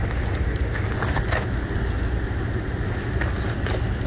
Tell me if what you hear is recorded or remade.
recorded